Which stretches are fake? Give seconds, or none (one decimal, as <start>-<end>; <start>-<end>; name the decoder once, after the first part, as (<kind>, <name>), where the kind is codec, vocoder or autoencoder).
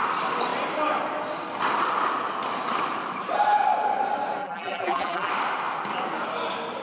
4.4-5.3 (vocoder, BigVGAN v2)